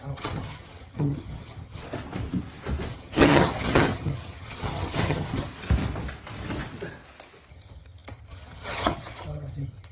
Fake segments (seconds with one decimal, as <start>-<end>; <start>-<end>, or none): 0.0-1.8; 2.9-5.5; 7.5-9.9